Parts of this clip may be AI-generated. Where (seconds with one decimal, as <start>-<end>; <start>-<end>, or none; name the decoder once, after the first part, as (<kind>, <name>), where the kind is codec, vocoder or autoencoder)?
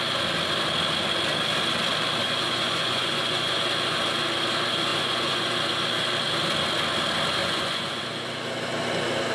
2.2-3.6 (vocoder, Vocos); 4.9-5.5; 7.4-8.0